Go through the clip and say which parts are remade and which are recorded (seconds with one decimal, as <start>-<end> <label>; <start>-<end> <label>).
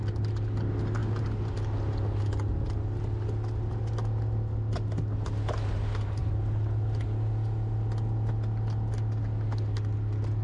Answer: 0.0-10.4 recorded